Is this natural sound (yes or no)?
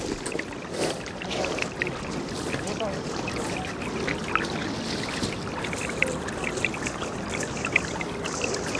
yes